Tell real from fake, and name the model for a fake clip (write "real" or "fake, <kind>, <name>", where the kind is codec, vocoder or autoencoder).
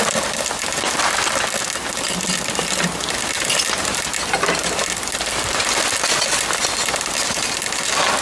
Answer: real